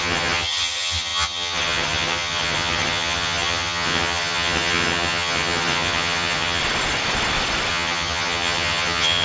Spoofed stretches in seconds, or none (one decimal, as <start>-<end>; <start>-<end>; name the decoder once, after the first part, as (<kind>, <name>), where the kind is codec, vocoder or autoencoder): 0.0-6.6 (vocoder, HiFi-GAN); 7.7-9.2